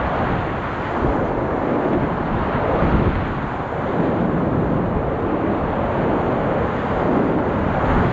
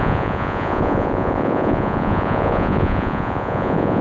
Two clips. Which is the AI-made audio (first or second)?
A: second